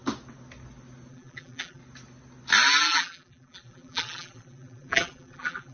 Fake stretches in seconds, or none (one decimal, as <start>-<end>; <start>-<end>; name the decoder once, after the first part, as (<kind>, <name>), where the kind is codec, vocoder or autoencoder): 1.1-1.8 (vocoder, BigVGAN v2); 2.8-5.7